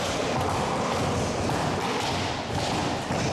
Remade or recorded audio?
recorded